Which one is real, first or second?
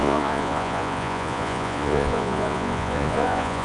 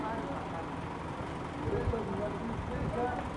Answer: second